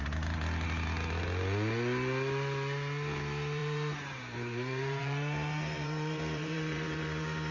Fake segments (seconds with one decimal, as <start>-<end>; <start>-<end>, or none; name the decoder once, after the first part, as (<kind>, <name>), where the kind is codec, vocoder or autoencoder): 3.6-7.5 (vocoder, BigVGAN v2)